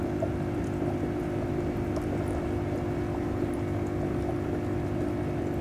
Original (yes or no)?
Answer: yes